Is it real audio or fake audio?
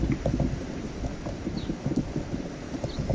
real